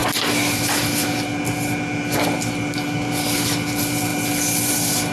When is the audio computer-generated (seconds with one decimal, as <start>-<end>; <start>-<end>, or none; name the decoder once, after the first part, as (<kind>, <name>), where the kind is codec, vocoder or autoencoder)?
none